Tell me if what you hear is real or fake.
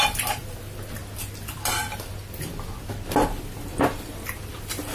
real